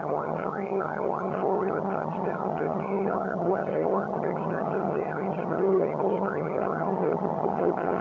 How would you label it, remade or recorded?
remade